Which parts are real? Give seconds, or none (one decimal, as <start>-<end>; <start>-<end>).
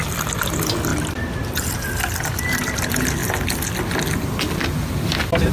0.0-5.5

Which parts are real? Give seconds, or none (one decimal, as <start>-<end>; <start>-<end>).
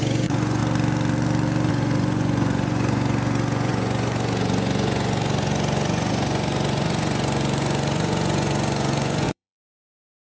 0.6-1.7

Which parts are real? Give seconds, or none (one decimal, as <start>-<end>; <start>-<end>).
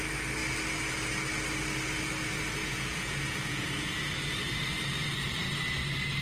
0.0-2.6; 4.1-6.2